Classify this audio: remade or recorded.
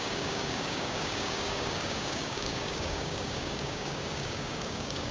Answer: remade